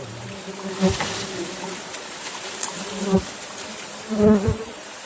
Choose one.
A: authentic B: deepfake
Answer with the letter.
B